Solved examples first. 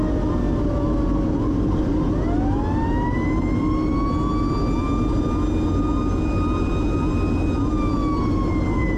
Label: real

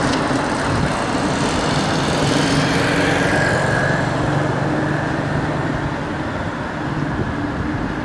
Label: real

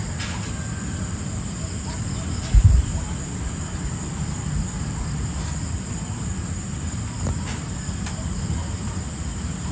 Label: real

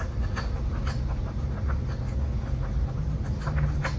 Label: real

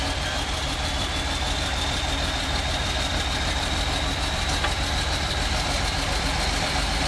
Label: fake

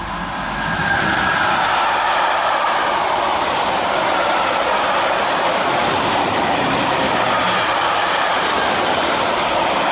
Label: real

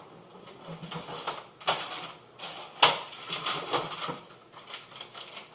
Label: real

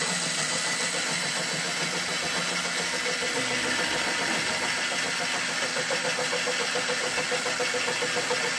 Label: real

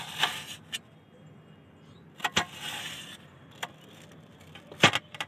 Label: real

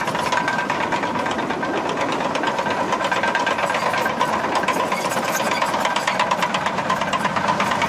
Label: real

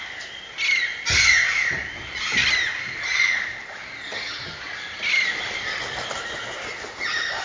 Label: real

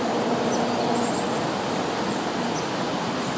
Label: real